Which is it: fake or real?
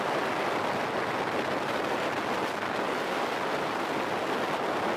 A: real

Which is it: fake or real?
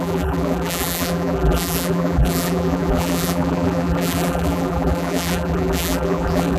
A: fake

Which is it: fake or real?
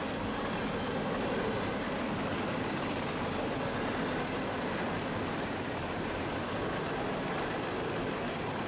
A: real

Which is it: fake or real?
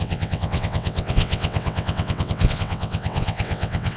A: fake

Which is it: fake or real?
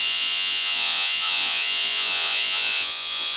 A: fake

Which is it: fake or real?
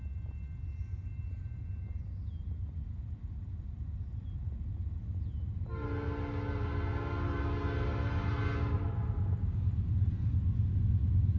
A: real